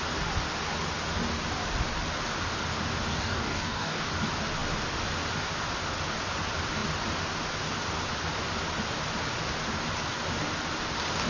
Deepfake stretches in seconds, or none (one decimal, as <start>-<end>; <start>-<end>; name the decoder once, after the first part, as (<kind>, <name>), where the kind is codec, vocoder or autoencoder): 3.1-4.1 (codec, DAC)